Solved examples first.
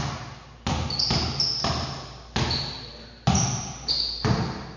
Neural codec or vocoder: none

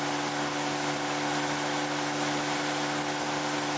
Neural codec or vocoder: none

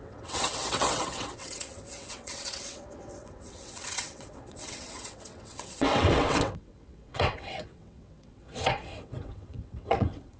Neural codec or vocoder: vocoder, WaveNeXt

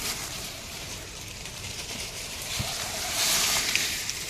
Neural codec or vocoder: vocoder, BigVGAN v2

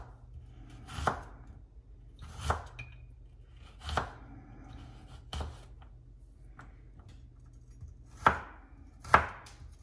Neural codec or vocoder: none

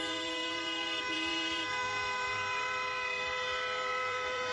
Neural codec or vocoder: vocoder, BigVGAN v2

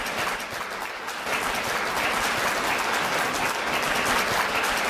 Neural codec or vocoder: none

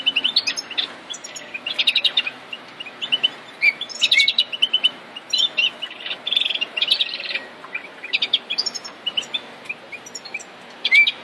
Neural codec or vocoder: none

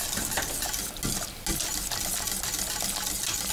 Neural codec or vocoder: none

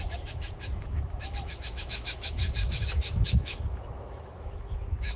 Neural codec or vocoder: autoencoder, DAC-VAE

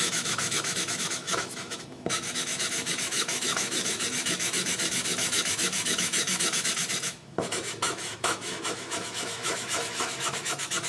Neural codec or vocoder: autoencoder, DAC-VAE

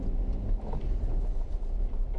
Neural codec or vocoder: none